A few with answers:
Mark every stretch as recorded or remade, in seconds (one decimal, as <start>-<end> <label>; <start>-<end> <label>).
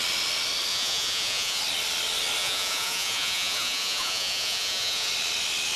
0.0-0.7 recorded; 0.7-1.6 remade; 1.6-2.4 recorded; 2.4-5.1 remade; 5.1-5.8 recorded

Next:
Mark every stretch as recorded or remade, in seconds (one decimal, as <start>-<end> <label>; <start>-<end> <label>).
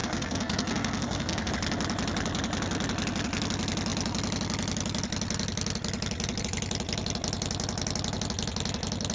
0.0-1.5 remade; 1.5-9.1 recorded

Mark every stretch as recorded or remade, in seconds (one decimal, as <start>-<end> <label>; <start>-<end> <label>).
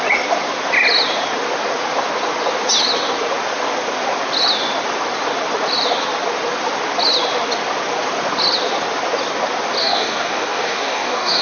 0.0-9.8 recorded; 9.8-11.4 remade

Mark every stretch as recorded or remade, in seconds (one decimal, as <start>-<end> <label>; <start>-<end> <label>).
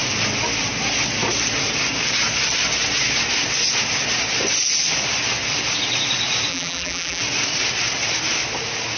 0.0-6.5 recorded; 6.5-7.2 remade; 7.2-9.0 recorded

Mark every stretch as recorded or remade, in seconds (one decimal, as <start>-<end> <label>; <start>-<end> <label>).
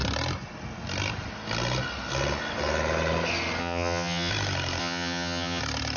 0.0-3.6 recorded; 3.6-4.3 remade; 4.3-4.8 recorded; 4.8-5.6 remade; 5.6-6.0 recorded